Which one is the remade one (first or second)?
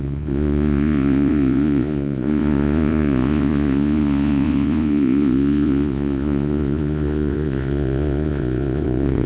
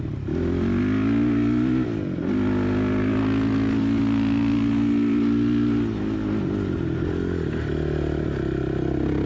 first